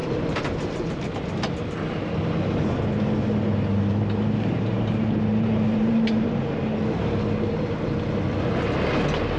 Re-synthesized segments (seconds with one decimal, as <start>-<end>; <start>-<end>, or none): 0.0-1.1; 4.0-6.6